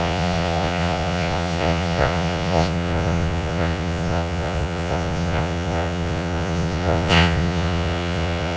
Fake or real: fake